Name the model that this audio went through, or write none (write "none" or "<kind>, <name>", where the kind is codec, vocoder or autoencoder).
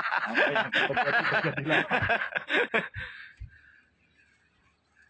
none